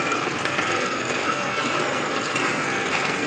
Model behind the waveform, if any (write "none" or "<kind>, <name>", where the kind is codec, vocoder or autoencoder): codec, SNAC